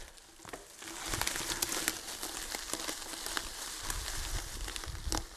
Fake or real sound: real